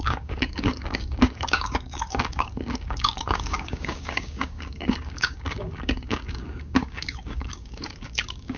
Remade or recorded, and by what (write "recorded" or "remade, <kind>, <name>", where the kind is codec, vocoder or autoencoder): remade, codec, DAC